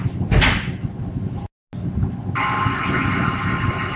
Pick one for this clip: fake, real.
real